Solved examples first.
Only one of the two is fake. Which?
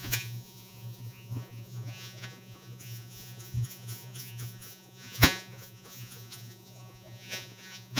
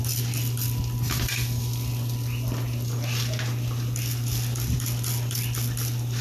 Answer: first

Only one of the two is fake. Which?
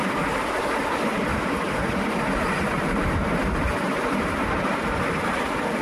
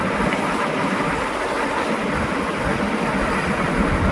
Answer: first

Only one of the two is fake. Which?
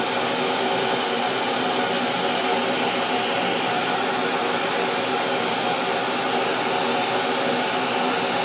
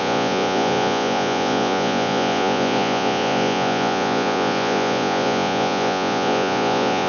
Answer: second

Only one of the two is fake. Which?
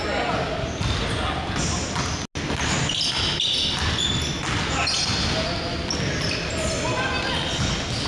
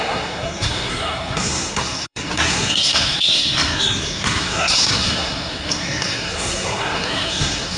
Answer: second